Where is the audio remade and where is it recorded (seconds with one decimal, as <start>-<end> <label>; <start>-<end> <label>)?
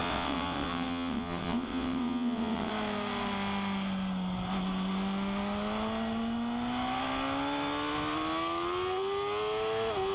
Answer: 0.0-2.7 remade; 2.7-10.1 recorded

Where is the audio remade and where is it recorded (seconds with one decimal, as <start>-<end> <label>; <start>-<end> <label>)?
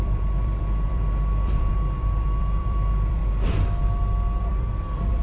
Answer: 0.0-3.2 remade; 3.2-4.4 recorded; 4.4-5.2 remade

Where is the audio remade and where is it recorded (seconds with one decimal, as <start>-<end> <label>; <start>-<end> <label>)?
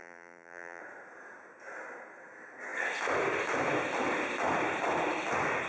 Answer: 0.0-0.8 remade; 0.8-5.7 recorded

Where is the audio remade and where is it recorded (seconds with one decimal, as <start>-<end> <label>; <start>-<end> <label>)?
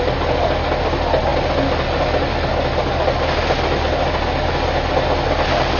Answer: 0.0-5.8 recorded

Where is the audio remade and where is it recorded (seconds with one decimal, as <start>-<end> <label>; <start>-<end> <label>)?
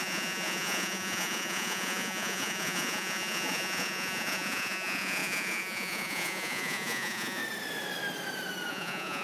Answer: 0.0-7.4 remade; 7.4-8.7 recorded; 8.7-9.2 remade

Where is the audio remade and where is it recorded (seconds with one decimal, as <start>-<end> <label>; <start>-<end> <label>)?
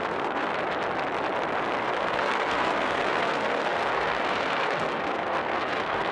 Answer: 0.0-0.5 remade; 0.5-1.8 recorded; 1.8-6.1 remade